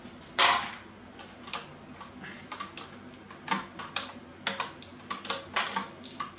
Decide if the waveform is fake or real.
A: real